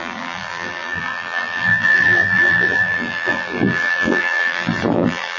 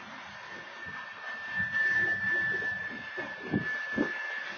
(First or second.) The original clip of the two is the second